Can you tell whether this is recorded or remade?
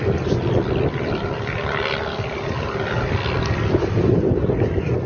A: recorded